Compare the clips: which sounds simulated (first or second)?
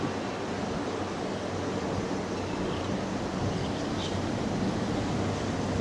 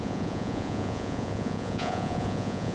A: second